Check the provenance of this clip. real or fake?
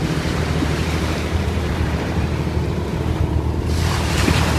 fake